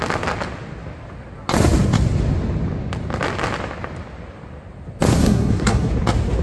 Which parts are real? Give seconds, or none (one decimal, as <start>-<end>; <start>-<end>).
0.0-5.2; 5.9-6.4